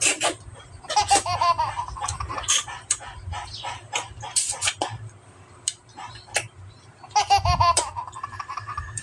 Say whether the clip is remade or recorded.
remade